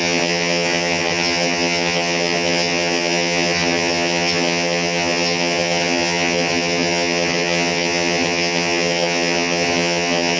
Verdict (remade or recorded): remade